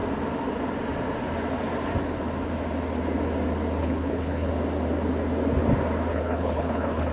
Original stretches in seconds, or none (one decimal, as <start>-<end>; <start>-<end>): 0.0-3.8; 4.5-6.1